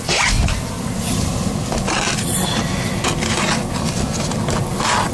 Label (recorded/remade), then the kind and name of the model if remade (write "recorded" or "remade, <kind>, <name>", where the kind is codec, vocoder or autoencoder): recorded